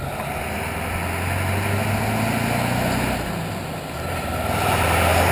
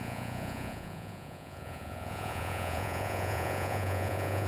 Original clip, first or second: first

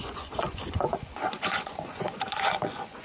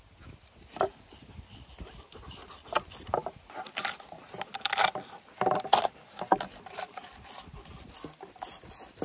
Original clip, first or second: second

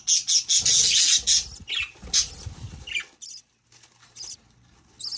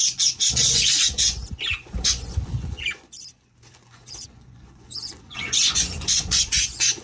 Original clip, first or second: first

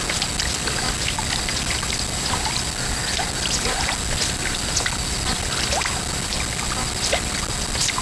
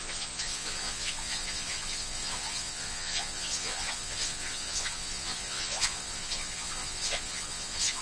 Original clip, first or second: first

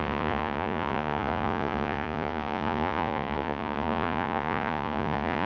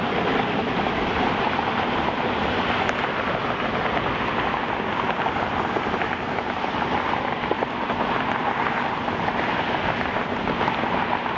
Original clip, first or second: second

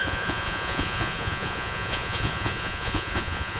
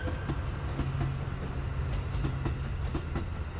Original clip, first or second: second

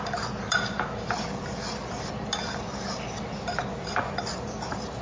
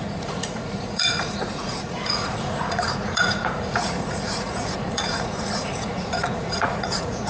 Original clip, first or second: first